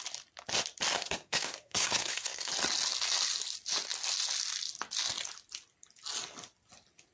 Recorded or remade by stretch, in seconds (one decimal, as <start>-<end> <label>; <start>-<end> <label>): 0.0-1.0 recorded; 1.0-2.5 remade; 2.5-7.1 recorded